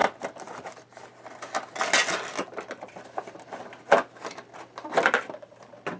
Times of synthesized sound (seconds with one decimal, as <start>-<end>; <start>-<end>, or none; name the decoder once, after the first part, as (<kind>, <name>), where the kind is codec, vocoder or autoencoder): none